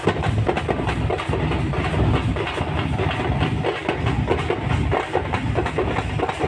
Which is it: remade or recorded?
recorded